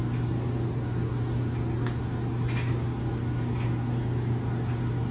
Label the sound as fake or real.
real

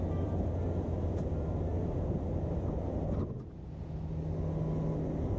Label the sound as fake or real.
real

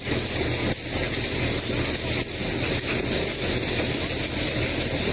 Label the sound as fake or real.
real